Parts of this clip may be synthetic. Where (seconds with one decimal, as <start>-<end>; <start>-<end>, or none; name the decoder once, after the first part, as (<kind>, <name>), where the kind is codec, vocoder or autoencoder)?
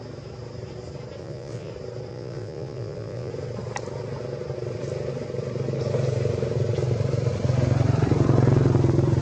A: 1.2-1.7 (vocoder, Vocos); 2.1-3.3